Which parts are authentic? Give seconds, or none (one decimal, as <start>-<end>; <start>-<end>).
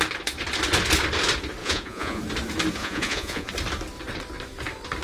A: 0.0-1.6; 2.2-2.8; 3.5-5.0